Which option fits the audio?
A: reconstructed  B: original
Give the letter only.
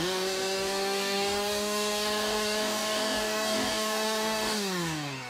A